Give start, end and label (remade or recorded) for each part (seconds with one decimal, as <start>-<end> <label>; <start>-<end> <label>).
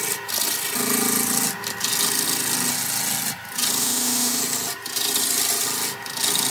0.0-3.8 recorded; 3.8-4.4 remade; 4.4-6.5 recorded